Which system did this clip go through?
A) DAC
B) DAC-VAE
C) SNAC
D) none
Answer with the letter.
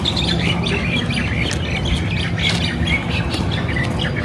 D